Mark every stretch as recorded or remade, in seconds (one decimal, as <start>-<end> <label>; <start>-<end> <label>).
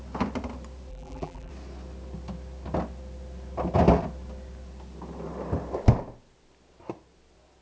0.0-0.9 recorded; 0.9-1.5 remade; 1.5-7.6 recorded